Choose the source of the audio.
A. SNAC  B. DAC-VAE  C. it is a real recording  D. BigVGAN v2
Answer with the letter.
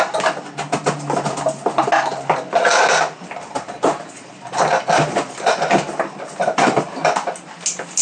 C